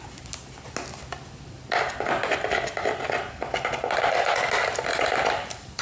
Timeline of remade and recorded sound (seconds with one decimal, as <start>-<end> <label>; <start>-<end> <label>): 0.0-4.9 recorded; 4.9-5.8 remade